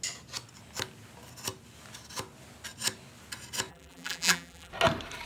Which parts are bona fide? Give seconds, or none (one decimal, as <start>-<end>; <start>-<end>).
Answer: 0.0-3.7; 4.7-5.3